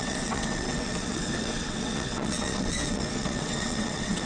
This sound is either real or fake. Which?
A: fake